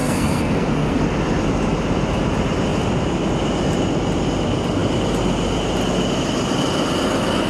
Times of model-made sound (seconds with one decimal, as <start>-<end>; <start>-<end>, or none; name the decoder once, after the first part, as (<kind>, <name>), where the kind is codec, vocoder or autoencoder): 0.0-1.0 (codec, SNAC)